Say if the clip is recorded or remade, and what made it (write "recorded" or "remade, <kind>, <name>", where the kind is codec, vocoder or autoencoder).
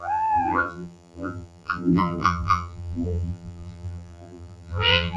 remade, vocoder, BigVGAN v2